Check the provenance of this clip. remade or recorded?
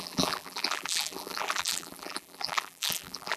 remade